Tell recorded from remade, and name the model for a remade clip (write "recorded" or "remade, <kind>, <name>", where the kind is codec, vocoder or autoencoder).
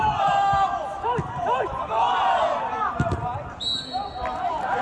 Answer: recorded